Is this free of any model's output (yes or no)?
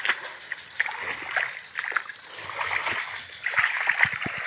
yes